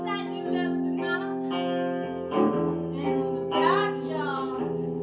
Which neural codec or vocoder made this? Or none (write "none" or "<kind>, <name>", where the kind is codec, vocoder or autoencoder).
none